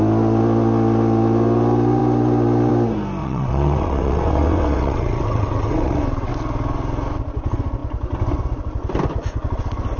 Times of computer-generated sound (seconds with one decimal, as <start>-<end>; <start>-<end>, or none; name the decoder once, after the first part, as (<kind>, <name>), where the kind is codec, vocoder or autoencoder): 3.2-6.3 (vocoder, WaveNeXt)